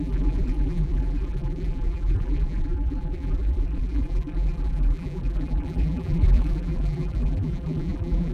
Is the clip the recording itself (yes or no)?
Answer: no